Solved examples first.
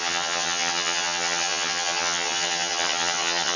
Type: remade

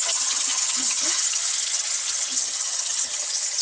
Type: remade